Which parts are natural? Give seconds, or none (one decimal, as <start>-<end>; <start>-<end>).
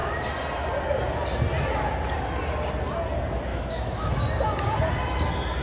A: 0.0-3.5; 4.1-5.6